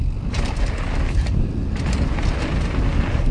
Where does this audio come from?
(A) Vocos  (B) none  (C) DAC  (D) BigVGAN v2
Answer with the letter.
B